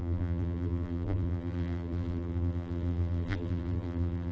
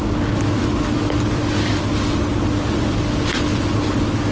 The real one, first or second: second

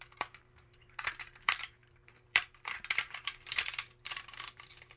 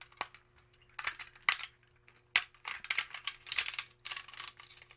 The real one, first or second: second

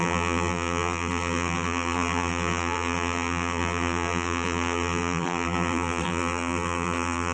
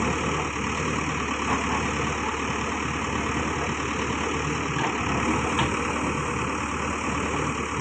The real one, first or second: second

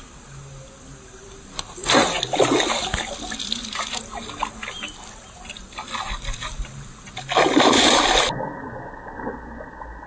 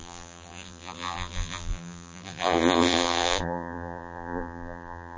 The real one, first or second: first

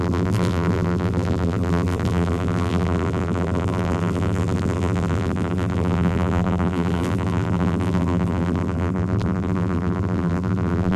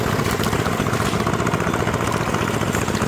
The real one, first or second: second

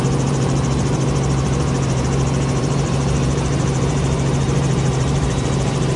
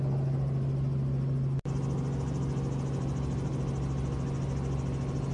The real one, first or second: second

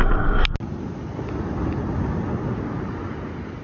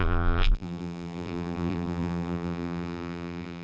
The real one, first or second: first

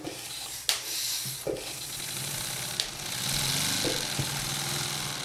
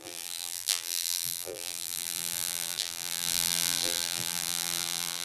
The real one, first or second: first